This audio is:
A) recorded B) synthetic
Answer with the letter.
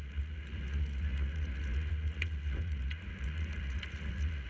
B